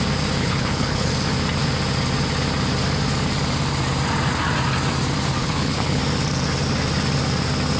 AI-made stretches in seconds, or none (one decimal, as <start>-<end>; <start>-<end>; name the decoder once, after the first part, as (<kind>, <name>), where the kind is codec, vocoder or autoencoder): 0.4-1.1 (codec, HILCodec); 5.4-6.0